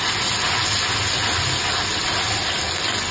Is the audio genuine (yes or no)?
yes